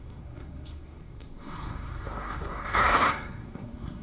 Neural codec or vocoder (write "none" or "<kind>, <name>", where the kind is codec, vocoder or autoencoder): codec, SNAC